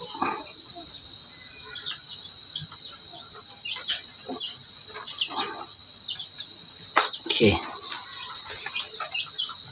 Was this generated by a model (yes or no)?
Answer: no